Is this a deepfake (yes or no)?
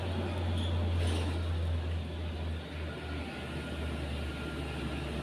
no